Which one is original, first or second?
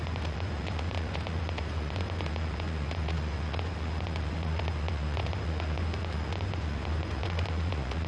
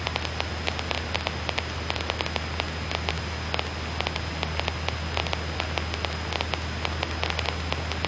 second